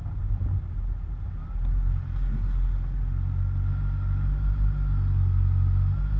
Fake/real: real